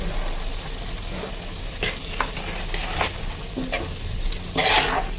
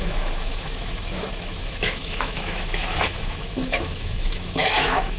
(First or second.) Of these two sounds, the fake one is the second